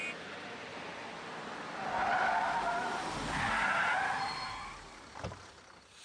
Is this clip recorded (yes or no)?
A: yes